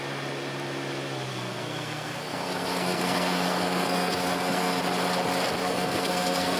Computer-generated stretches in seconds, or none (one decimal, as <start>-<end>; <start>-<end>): 1.3-4.8; 5.6-6.6